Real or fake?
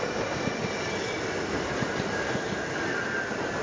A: real